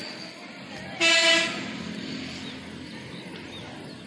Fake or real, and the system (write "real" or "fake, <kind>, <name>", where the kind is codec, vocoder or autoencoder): real